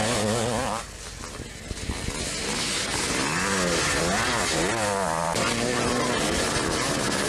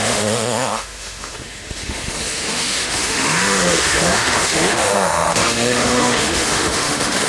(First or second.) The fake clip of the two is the second